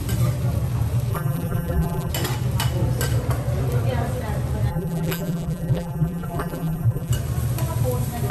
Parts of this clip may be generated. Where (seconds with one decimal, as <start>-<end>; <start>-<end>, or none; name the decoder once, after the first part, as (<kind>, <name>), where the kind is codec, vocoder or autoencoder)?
1.1-2.1 (vocoder, BigVGAN v2); 4.7-7.1